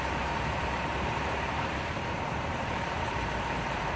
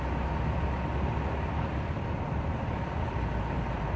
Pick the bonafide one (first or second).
second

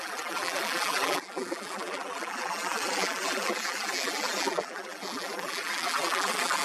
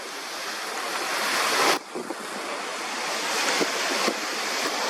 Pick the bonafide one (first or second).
second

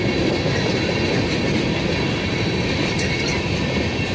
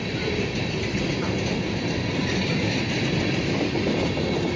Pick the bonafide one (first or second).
first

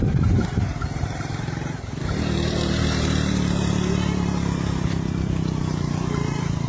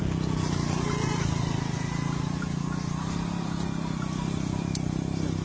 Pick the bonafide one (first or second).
second